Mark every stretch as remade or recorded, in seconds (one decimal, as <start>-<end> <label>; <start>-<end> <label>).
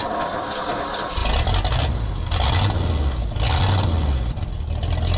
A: 0.0-0.7 remade; 0.7-5.2 recorded